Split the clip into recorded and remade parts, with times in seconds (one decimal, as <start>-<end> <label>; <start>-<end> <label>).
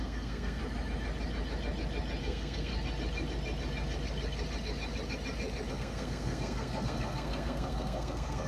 0.0-0.6 remade; 0.6-2.2 recorded; 2.2-2.7 remade; 2.7-5.7 recorded; 5.7-8.5 remade